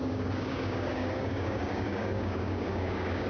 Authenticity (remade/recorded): remade